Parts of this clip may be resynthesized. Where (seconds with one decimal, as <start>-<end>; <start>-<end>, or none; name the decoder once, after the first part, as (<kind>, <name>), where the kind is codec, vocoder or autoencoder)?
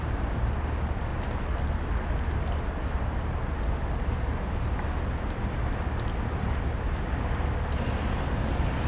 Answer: none